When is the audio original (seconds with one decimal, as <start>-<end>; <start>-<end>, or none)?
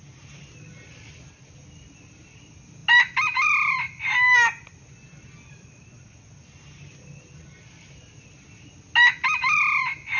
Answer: 0.0-10.2